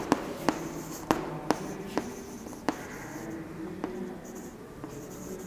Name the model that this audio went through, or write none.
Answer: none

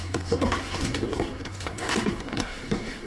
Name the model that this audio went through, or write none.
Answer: codec, SNAC